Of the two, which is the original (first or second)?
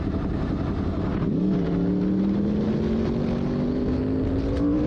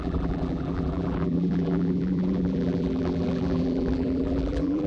first